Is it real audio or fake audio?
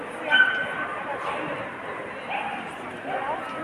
real